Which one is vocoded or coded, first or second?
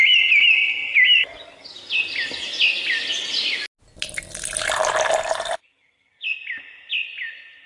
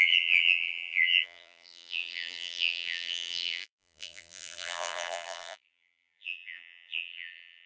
second